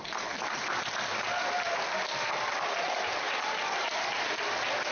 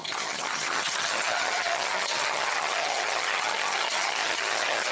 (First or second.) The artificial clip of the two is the second